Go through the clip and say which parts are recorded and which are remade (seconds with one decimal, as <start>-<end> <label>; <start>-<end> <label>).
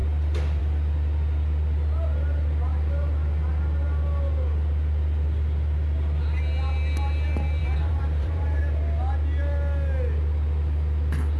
0.0-7.6 recorded; 7.6-8.6 remade; 8.6-11.4 recorded